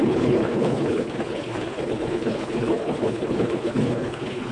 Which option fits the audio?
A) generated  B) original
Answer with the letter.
A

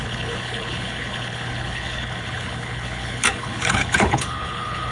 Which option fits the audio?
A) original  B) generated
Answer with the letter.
B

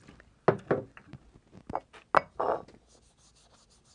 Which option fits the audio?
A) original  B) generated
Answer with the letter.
A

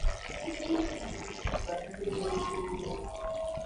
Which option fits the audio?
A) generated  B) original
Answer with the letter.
B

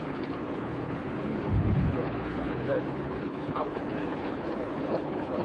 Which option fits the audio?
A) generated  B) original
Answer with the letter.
A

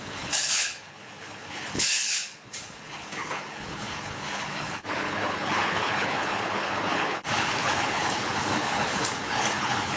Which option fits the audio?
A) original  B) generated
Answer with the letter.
B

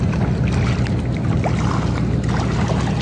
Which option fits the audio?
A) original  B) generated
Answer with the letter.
A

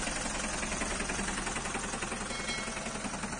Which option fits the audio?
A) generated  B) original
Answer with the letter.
B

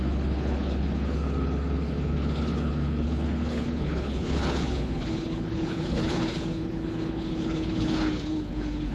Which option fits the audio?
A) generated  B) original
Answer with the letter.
A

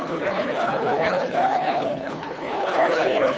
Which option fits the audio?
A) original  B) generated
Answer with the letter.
B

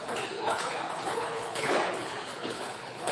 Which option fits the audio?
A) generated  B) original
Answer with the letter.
A